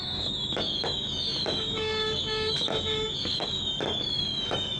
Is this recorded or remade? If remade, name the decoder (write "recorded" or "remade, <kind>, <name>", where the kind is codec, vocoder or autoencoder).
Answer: remade, codec, DAC